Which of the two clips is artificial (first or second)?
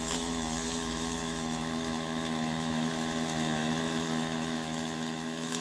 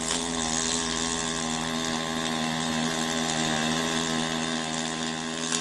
first